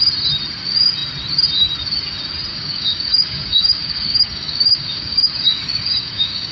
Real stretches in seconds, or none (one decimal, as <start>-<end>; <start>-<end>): 0.0-2.5

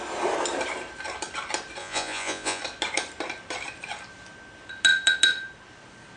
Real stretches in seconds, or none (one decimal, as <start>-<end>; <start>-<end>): 0.0-1.8; 2.6-6.2

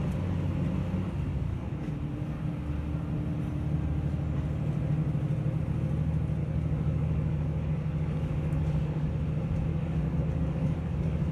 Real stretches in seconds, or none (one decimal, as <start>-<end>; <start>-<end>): 0.0-1.3; 1.9-6.4; 9.1-9.7

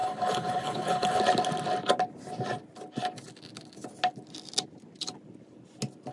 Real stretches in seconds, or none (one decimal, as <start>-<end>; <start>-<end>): 1.2-6.1

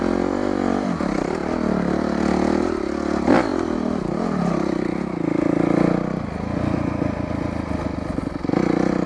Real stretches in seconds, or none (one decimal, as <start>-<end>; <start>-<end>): 0.0-9.1

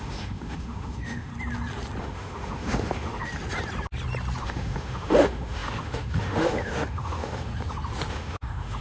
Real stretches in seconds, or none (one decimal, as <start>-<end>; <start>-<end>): 1.3-2.0; 3.3-4.4; 7.5-8.1

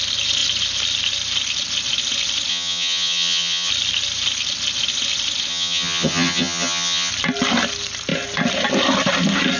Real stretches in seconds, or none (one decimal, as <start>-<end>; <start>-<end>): 0.0-2.5; 3.7-5.5; 7.1-9.6

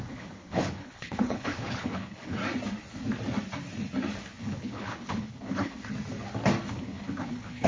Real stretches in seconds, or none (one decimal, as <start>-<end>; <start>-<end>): 2.4-4.4; 5.8-6.7